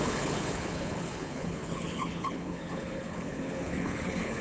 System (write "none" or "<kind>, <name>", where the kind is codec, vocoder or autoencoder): codec, HILCodec